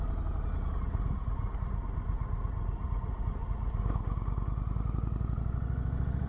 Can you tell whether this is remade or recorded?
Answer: recorded